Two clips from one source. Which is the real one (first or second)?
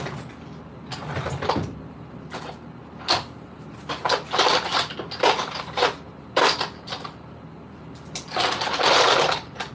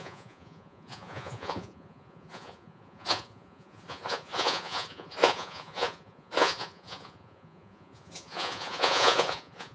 first